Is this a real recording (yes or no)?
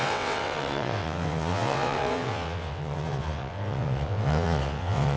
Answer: no